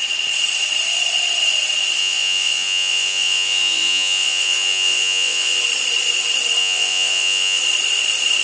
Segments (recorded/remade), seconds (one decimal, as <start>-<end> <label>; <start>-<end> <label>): 0.0-2.0 recorded; 2.0-5.6 remade; 5.6-6.6 recorded; 6.6-7.6 remade; 7.6-8.4 recorded